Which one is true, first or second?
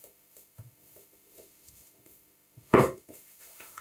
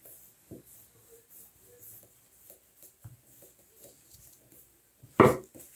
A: second